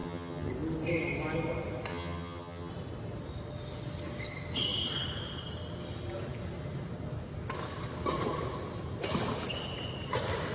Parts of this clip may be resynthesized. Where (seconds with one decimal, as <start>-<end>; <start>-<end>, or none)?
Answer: 0.0-0.5; 1.9-2.7